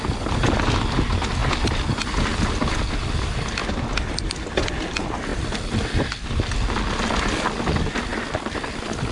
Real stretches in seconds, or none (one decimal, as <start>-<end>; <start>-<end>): 0.0-9.1